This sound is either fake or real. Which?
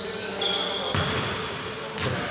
real